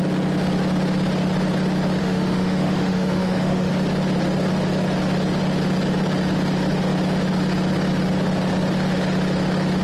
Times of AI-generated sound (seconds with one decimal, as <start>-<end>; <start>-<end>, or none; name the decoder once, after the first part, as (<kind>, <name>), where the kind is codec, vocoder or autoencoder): 2.0-3.7 (autoencoder, DAC-VAE)